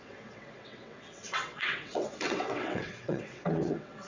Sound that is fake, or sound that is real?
fake